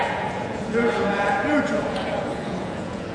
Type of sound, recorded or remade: remade